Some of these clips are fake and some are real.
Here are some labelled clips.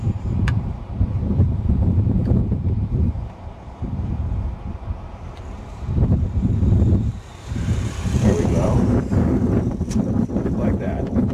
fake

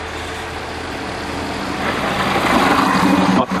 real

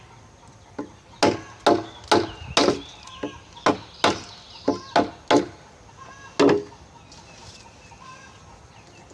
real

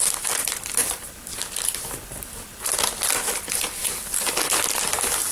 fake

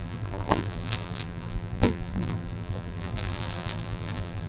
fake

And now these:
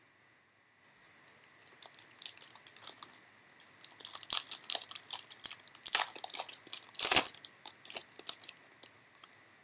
real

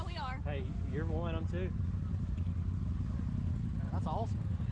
real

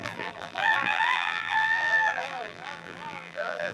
fake